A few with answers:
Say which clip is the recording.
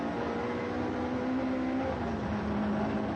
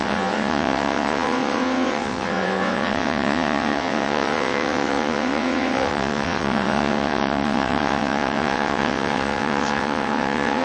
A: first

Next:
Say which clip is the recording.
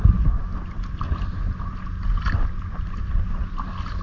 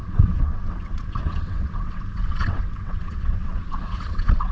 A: first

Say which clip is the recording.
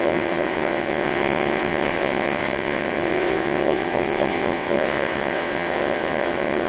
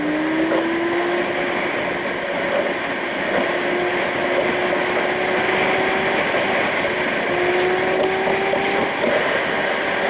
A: second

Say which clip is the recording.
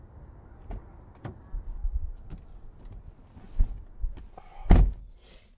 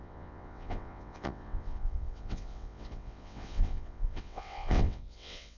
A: first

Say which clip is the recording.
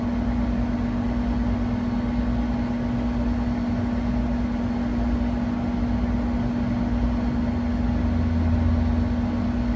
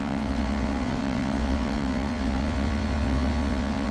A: first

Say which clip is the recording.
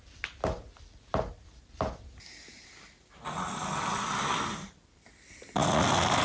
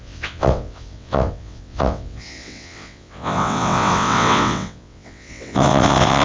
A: first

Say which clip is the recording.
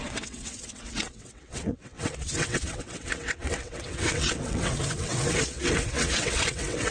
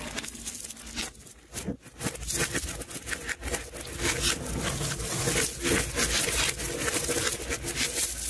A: second